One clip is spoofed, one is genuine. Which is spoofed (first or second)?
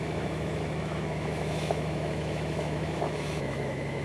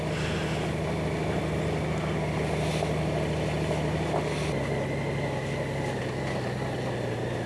first